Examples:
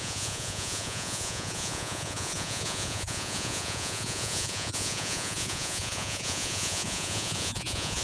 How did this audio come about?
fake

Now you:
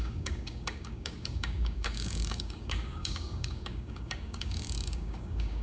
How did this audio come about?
fake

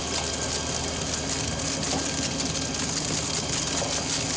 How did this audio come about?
real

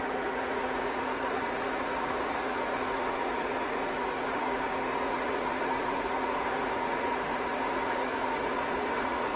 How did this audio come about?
fake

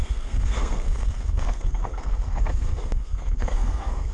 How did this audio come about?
fake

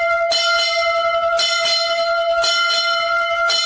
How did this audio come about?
real